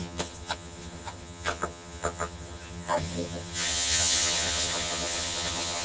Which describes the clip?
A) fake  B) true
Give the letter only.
A